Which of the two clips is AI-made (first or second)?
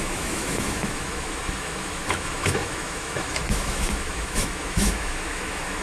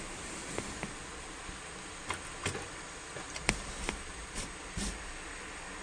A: first